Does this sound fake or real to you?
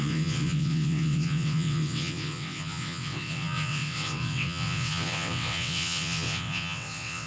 fake